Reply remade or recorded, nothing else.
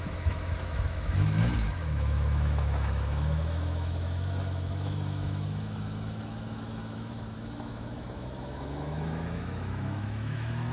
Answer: remade